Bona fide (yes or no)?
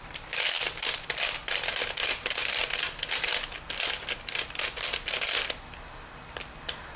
no